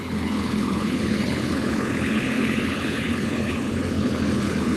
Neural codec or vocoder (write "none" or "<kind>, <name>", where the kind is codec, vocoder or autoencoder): codec, HILCodec